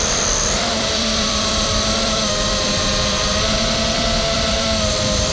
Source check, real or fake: fake